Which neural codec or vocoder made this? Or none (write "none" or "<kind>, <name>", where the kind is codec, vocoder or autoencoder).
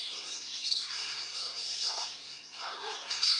codec, SNAC